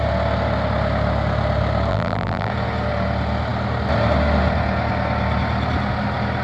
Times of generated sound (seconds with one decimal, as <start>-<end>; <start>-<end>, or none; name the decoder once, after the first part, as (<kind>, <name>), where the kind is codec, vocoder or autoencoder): 1.9-2.5 (vocoder, BigVGAN v2)

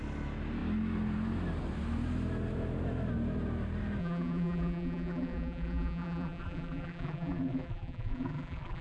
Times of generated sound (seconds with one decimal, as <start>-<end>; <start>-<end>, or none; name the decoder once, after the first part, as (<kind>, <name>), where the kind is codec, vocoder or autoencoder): 4.0-8.8 (vocoder, BigVGAN v2)

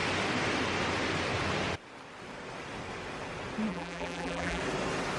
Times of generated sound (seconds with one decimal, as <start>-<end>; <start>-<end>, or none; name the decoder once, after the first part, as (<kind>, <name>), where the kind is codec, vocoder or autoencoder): 3.7-4.6 (vocoder, BigVGAN v2)

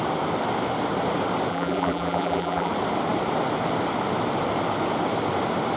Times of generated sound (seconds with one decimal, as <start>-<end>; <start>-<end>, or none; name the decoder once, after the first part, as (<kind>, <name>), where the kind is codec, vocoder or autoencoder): 1.5-2.7 (vocoder, BigVGAN v2)

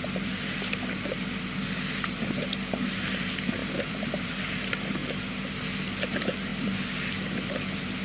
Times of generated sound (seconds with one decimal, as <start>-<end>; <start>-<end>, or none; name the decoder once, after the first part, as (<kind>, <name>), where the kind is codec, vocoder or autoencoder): 3.6-4.3 (vocoder, BigVGAN v2)

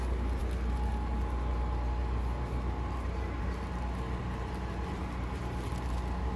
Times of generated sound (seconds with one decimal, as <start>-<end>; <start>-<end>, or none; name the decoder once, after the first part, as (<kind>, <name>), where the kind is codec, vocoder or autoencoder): none